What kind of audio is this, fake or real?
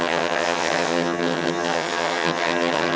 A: fake